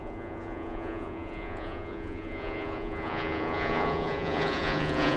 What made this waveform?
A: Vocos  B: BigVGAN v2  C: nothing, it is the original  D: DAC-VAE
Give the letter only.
A